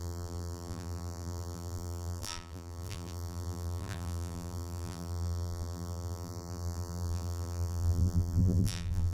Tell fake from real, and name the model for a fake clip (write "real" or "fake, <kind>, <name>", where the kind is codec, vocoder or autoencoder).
fake, vocoder, BigVGAN v2